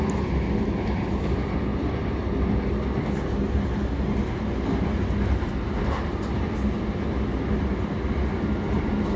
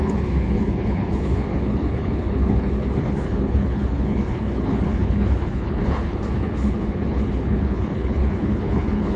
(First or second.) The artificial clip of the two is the second